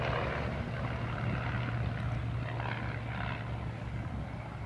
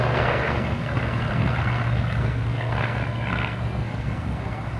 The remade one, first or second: second